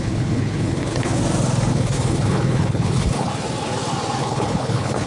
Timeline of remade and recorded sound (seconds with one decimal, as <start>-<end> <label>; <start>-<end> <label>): 0.0-1.2 remade; 1.2-1.7 recorded; 1.7-3.3 remade; 3.3-4.2 recorded; 4.2-5.1 remade